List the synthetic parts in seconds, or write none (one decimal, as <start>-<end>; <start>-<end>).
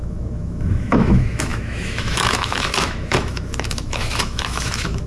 0.0-5.1